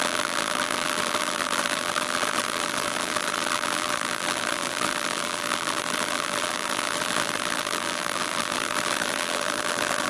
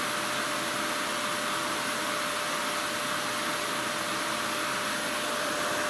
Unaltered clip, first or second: second